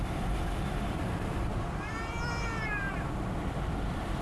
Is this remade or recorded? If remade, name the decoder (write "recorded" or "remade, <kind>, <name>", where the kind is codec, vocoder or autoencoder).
remade, vocoder, BigVGAN v2